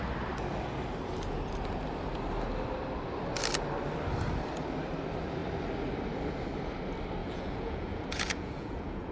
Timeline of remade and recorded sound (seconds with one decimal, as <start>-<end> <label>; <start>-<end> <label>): 0.0-7.2 recorded; 7.2-9.1 remade